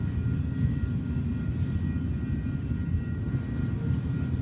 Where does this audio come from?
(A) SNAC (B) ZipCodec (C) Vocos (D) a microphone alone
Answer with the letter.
D